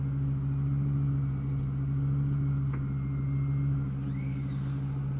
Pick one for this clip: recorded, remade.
recorded